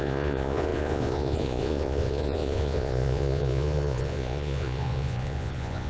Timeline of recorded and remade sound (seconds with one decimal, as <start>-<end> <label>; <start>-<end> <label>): 0.0-5.9 remade